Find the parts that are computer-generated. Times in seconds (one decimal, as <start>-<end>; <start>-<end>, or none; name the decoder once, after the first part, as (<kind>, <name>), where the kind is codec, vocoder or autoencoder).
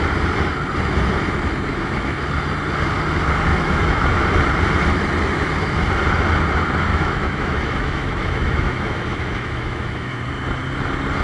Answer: 1.7-2.2 (autoencoder, DAC-VAE); 3.5-4.2; 6.9-10.2